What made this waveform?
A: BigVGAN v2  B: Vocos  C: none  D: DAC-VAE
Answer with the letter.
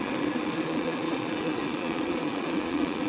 B